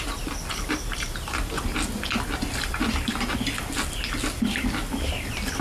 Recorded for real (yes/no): yes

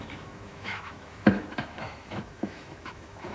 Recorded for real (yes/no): no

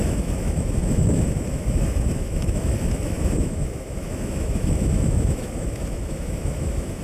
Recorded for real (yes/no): no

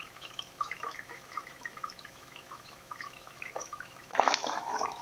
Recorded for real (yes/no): no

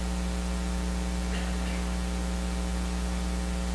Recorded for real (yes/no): yes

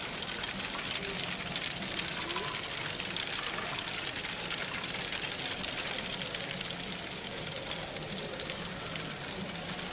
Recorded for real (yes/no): yes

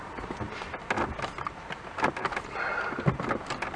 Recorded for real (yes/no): yes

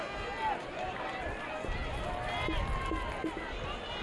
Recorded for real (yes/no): yes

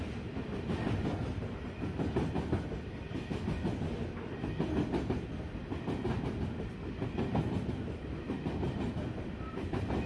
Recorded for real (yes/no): yes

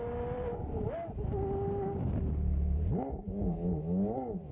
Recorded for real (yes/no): yes